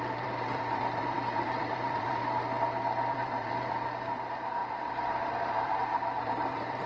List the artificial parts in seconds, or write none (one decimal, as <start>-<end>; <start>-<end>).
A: 0.0-2.2; 3.1-4.6; 5.3-6.9